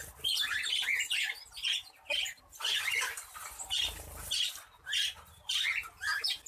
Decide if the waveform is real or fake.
fake